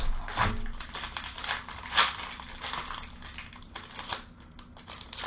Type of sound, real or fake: real